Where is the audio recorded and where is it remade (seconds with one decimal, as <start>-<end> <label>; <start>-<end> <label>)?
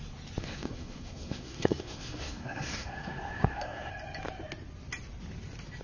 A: 0.0-0.4 recorded; 0.4-3.9 remade; 3.9-5.8 recorded